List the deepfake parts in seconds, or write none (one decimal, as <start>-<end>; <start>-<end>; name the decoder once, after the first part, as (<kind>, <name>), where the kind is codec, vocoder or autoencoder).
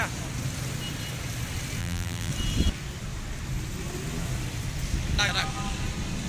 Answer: 1.8-2.3 (vocoder, BigVGAN v2)